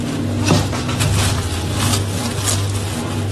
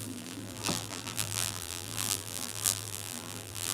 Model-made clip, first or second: second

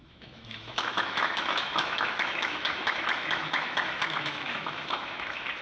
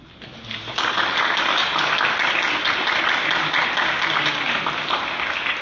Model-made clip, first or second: first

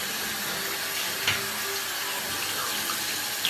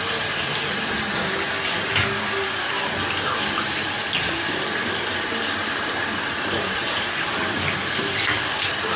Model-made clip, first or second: second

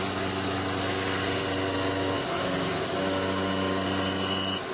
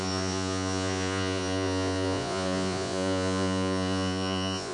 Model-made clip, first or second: second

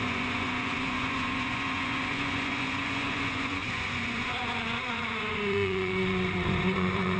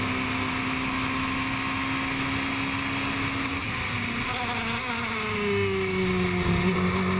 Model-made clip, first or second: first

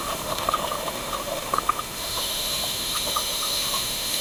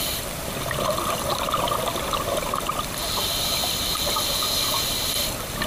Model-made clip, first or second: first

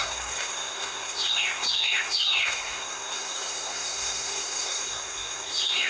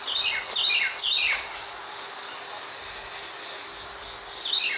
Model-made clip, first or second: first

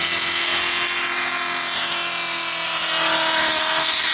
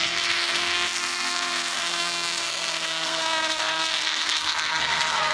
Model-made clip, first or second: second